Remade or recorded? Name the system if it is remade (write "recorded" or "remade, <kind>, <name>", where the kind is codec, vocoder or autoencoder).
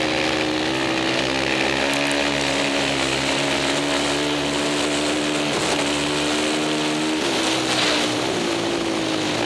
recorded